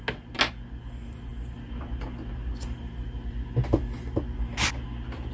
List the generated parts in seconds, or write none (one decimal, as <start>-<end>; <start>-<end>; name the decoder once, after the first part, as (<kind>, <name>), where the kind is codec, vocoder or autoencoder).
none